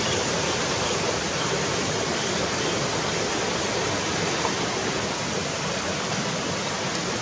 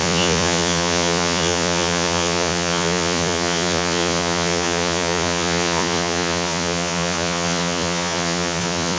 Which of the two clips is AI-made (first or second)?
second